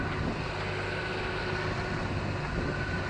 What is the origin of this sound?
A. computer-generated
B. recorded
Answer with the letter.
B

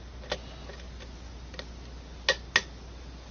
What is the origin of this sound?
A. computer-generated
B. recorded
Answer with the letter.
B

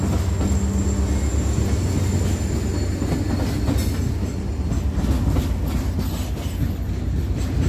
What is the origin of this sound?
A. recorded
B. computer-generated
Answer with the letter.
A